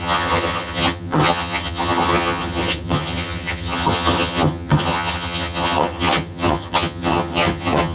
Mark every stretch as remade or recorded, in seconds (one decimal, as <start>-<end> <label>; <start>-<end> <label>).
0.0-7.9 remade

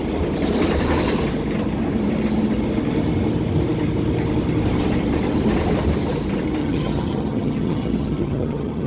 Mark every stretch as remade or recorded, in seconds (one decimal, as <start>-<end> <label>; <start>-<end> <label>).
0.0-6.6 recorded; 6.6-8.9 remade

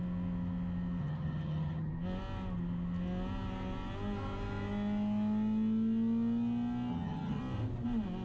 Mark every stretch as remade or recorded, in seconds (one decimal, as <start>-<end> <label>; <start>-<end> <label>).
0.0-1.0 recorded; 1.0-1.9 remade; 1.9-6.9 recorded; 6.9-7.4 remade; 7.4-8.2 recorded

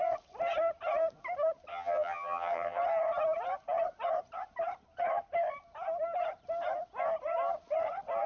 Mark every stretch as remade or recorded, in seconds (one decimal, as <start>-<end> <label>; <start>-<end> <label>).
0.0-1.7 recorded; 1.7-2.8 remade; 2.8-8.3 recorded